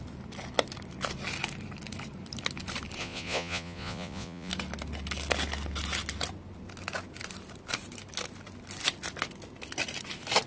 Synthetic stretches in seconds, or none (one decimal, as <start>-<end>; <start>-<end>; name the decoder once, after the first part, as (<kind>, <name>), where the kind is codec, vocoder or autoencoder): 3.0-4.5 (vocoder, Vocos)